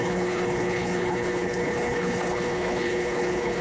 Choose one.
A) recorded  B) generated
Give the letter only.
B